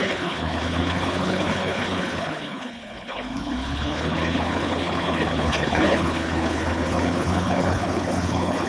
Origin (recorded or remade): remade